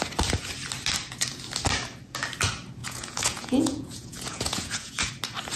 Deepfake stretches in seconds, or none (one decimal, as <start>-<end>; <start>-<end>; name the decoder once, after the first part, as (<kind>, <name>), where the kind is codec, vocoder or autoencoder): 2.8-5.1 (vocoder, Vocos)